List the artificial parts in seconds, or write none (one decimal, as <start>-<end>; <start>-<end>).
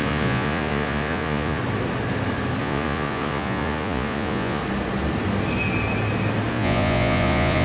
0.0-1.6; 2.6-4.6; 6.5-7.6